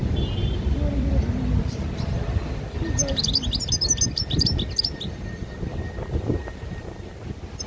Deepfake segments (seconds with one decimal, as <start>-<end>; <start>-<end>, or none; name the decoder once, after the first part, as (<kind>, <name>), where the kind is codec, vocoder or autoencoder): 6.4-7.2 (vocoder, BigVGAN v2)